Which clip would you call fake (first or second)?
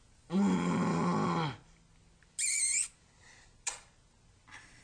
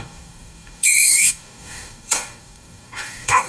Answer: second